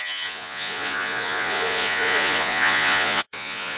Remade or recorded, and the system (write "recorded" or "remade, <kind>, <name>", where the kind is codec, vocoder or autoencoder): remade, vocoder, Vocos